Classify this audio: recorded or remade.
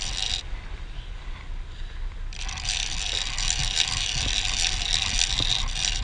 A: recorded